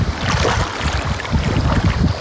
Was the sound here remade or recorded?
recorded